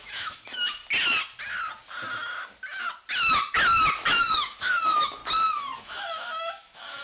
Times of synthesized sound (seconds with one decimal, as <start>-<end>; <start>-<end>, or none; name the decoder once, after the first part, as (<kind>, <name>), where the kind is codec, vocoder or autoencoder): 0.0-0.8 (autoencoder, DAC-VAE); 4.1-5.2; 5.8-7.0